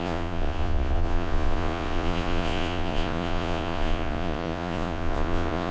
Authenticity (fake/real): fake